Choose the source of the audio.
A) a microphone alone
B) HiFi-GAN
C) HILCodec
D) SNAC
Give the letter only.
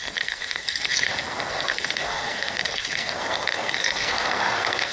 D